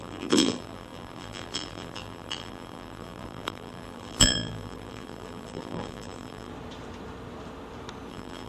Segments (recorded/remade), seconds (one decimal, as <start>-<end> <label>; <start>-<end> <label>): 0.0-6.5 remade; 6.5-8.1 recorded; 8.1-8.5 remade